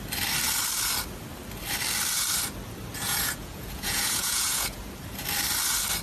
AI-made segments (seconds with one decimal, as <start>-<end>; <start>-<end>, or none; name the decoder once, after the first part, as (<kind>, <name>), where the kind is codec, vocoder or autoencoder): 2.9-4.8 (vocoder, Vocos)